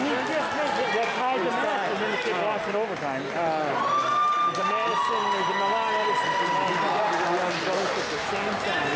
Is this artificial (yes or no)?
no